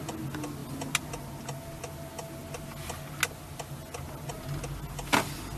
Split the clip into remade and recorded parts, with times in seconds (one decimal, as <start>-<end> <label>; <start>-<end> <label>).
0.0-5.6 recorded